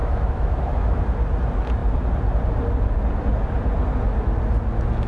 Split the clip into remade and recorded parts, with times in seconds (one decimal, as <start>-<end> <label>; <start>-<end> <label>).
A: 0.0-1.0 remade; 1.0-5.1 recorded